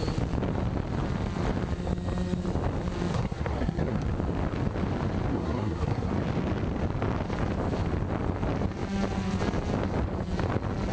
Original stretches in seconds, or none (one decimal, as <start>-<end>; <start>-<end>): 0.0-3.1; 4.1-5.3; 6.1-10.9